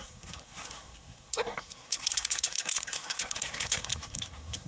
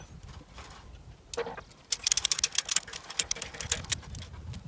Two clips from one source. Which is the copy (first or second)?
first